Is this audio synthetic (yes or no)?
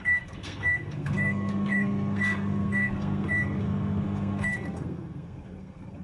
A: yes